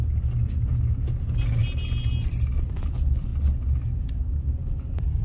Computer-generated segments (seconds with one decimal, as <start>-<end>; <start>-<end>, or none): none